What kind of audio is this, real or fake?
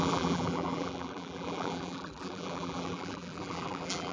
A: fake